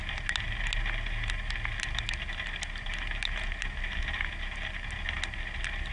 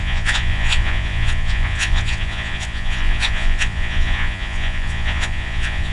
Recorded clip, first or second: first